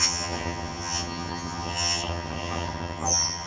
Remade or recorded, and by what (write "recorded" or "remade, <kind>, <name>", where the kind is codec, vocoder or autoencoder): remade, vocoder, HiFi-GAN